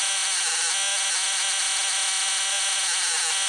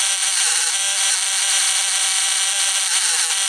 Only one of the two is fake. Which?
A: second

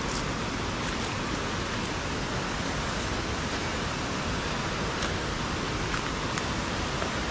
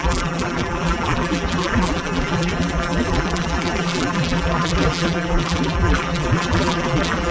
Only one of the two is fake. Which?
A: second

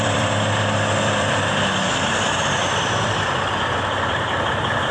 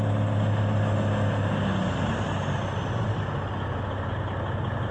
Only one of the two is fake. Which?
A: first